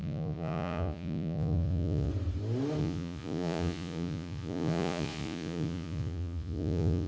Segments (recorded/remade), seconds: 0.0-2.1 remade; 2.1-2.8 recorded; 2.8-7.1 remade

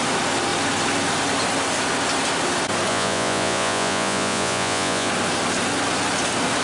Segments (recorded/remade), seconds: 0.0-2.9 recorded; 2.9-5.1 remade; 5.1-6.6 recorded

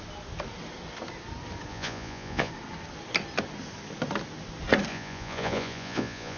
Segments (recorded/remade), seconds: 0.0-1.7 recorded; 1.7-2.5 remade; 2.5-4.9 recorded; 4.9-6.4 remade